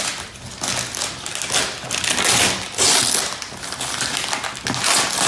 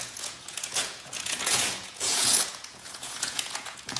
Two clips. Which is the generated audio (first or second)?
second